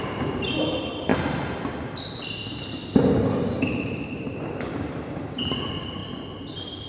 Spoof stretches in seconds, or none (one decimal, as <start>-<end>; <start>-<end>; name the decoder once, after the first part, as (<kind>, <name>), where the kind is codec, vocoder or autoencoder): 0.0-1.1 (vocoder, BigVGAN v2); 3.2-6.0; 6.5-6.9

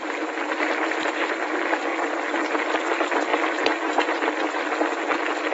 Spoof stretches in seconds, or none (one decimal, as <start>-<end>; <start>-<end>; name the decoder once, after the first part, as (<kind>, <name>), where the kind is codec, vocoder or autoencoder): 1.9-2.6 (vocoder, BigVGAN v2); 3.3-4.0

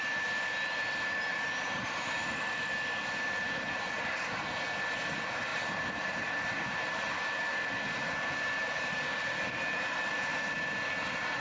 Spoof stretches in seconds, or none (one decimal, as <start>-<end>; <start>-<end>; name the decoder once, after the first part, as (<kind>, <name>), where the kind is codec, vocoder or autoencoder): 1.3-2.3 (vocoder, BigVGAN v2); 5.5-7.2; 8.6-10.1

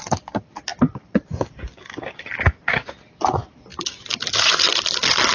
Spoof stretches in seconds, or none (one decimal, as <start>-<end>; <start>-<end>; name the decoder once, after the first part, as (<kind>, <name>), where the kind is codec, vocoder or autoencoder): 0.7-1.8 (vocoder, BigVGAN v2); 3.7-4.6

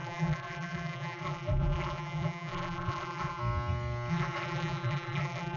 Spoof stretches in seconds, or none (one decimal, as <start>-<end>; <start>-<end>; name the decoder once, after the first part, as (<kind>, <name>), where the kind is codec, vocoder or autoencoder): 0.0-3.4 (vocoder, BigVGAN v2); 4.1-5.6

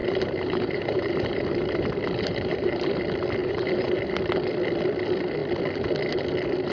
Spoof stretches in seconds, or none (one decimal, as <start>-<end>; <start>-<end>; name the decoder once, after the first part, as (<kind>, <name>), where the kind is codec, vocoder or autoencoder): 0.0-3.0 (vocoder, BigVGAN v2); 3.4-4.1

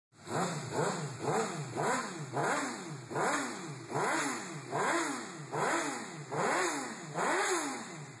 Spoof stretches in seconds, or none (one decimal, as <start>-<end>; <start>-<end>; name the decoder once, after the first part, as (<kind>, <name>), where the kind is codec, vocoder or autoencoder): none

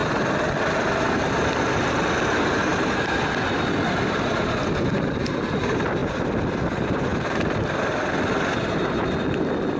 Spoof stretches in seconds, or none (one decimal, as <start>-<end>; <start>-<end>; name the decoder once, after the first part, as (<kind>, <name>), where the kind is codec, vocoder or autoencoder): 2.7-4.4 (vocoder, BigVGAN v2); 6.0-6.6; 7.1-7.8